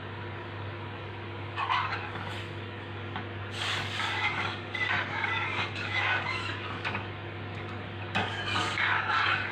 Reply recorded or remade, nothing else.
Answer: remade